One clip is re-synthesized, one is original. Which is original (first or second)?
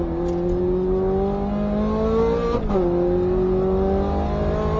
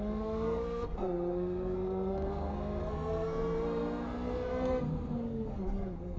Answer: first